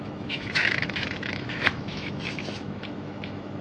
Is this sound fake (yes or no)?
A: yes